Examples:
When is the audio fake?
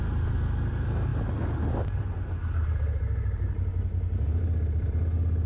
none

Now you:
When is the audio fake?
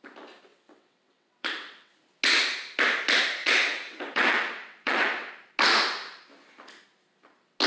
0.5-1.9 (vocoder, WaveNeXt); 3.4-5.3